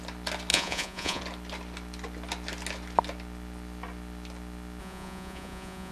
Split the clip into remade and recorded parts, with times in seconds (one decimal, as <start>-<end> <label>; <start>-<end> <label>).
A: 0.0-0.5 recorded; 0.5-1.2 remade; 1.2-4.8 recorded; 4.8-5.9 remade